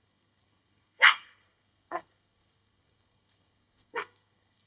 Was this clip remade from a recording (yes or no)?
yes